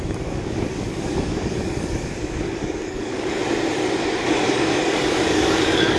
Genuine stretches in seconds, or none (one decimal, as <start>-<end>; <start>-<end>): 3.4-4.0